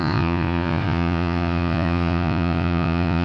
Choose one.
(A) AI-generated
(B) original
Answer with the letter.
A